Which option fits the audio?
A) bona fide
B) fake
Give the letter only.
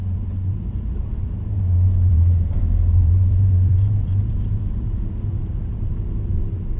B